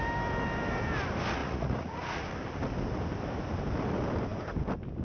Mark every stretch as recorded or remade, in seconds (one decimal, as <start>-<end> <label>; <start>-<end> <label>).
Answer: 0.0-1.4 recorded; 1.4-2.2 remade; 2.2-5.0 recorded